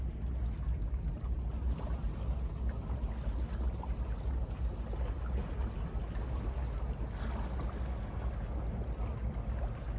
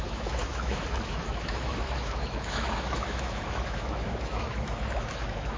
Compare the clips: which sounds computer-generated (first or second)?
second